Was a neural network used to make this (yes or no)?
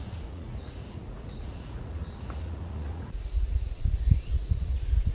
yes